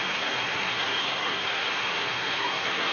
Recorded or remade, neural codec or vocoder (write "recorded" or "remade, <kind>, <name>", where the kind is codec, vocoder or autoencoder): remade, codec, SNAC